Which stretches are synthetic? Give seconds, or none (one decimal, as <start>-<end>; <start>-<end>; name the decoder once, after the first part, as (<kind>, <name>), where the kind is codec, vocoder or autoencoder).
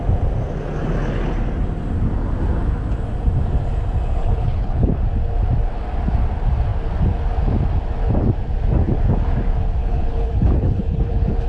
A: 4.2-4.9 (codec, HILCodec); 9.8-11.5